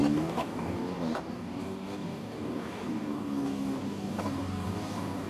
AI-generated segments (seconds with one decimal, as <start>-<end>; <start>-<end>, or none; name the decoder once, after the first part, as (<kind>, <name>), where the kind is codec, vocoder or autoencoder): 0.0-5.3 (codec, DAC)